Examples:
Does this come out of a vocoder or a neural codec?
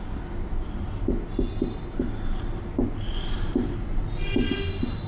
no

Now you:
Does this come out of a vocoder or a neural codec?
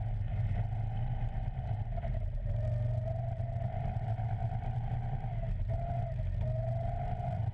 no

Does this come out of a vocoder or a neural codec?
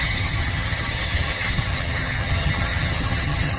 yes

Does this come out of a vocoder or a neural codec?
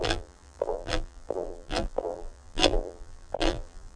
yes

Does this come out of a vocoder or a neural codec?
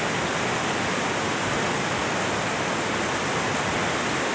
no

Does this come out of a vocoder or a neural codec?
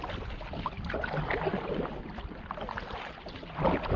no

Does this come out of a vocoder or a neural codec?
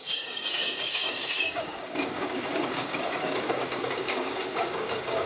yes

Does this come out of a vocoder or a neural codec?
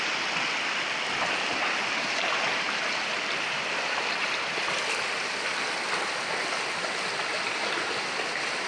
no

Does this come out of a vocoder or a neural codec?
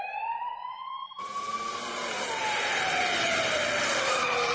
yes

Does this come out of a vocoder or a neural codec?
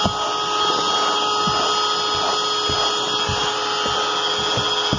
no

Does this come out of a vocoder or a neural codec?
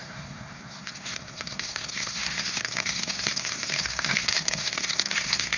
yes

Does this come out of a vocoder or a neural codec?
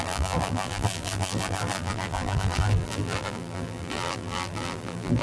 yes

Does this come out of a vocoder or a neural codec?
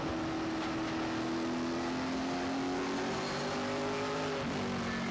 no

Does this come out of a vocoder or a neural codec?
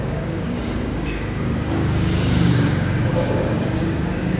yes